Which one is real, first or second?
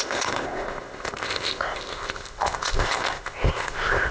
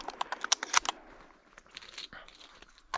second